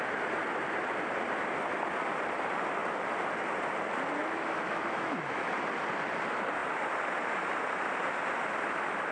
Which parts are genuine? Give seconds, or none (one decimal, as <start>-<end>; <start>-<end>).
0.0-4.2; 5.5-9.1